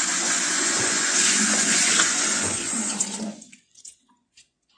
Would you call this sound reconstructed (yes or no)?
yes